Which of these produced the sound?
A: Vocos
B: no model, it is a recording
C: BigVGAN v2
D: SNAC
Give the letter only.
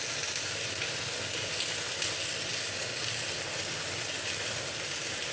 B